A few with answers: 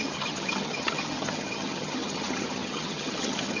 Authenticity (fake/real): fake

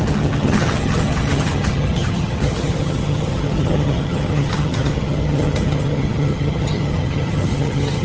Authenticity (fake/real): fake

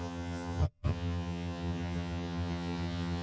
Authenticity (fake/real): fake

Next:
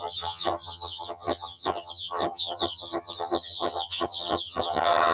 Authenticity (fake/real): fake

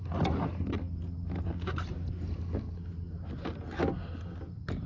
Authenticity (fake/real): real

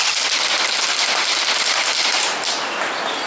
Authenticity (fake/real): real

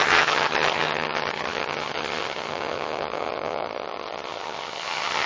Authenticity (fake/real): fake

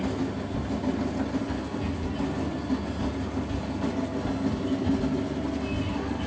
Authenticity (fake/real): real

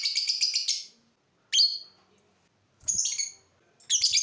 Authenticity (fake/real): real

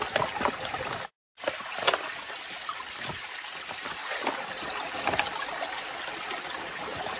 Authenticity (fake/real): real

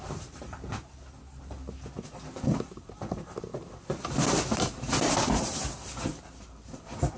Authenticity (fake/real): real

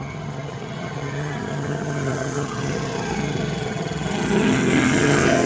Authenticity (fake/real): fake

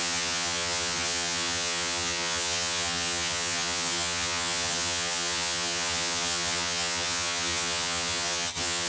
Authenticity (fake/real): fake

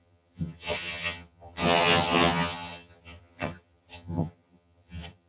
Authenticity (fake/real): fake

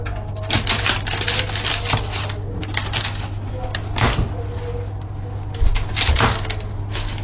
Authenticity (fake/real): real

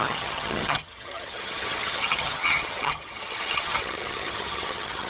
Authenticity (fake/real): fake